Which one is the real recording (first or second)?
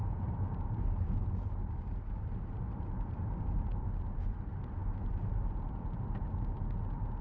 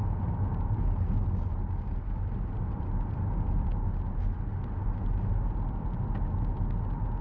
second